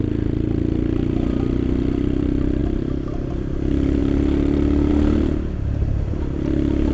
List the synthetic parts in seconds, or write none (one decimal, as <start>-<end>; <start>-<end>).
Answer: 2.6-3.3